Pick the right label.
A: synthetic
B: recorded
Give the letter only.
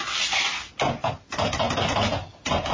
B